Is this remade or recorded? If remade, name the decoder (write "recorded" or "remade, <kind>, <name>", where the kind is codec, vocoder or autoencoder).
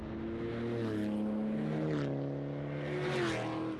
recorded